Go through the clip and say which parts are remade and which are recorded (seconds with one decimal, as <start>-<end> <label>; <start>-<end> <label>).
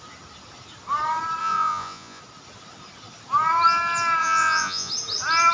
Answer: 0.0-1.4 recorded; 1.4-2.2 remade; 2.2-4.2 recorded; 4.2-4.9 remade; 4.9-5.5 recorded